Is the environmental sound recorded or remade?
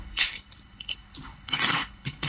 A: remade